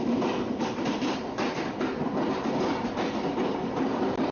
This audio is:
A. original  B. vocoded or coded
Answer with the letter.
A